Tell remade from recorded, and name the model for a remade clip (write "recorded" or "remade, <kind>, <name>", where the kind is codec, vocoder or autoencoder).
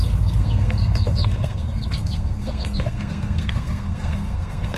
remade, codec, SNAC